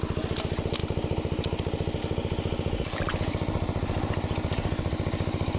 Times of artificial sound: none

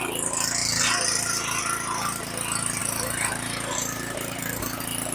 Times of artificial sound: 2.8-4.6